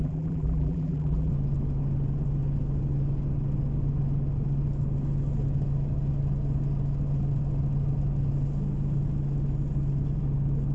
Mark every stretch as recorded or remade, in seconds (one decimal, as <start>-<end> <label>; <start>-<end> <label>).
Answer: 0.0-1.3 remade; 1.3-10.7 recorded